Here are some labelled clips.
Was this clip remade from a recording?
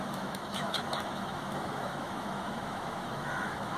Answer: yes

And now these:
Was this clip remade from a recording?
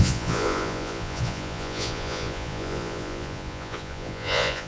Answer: yes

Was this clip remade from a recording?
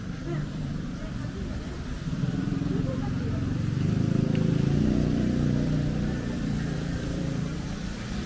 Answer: yes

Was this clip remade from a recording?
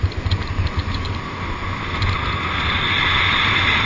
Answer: no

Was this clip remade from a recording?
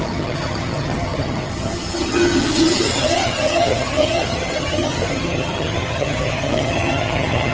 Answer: yes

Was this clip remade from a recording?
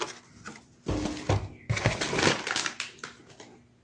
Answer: no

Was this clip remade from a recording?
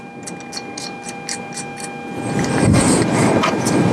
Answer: no